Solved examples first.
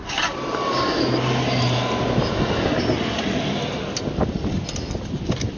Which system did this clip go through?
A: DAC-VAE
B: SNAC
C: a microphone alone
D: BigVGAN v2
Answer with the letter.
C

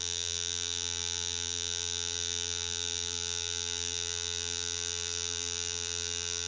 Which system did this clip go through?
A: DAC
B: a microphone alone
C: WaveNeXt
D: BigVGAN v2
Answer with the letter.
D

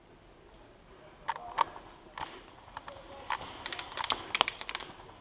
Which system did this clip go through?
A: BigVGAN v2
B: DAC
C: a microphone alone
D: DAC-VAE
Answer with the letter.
C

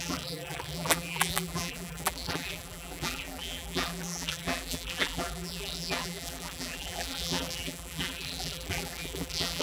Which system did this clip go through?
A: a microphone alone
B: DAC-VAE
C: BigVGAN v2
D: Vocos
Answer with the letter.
C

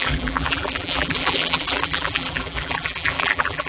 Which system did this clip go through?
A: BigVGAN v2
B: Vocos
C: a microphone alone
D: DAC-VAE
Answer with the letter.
A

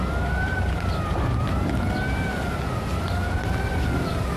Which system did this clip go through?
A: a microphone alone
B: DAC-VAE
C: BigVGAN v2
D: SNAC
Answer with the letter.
A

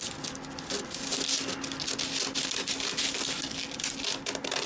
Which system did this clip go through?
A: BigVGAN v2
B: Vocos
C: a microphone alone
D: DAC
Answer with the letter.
C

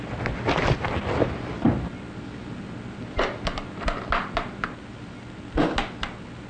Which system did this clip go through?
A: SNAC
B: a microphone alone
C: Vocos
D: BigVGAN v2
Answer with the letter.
B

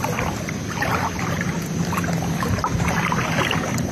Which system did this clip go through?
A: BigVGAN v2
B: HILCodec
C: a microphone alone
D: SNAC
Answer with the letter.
A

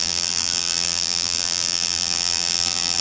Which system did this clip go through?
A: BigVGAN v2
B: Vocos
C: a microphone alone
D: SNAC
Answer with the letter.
A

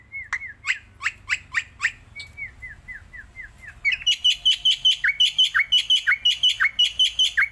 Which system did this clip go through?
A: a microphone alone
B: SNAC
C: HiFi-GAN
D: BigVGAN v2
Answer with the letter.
A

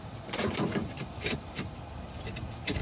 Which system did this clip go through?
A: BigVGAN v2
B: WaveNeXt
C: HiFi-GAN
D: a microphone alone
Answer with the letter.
A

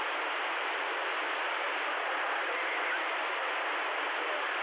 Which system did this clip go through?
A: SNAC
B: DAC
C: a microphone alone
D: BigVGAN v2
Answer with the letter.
D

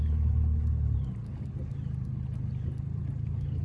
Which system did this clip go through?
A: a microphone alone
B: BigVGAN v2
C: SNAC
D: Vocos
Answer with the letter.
A